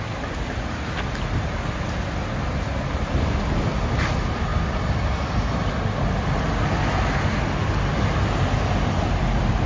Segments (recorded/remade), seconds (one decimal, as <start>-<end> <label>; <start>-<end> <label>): 0.0-9.7 recorded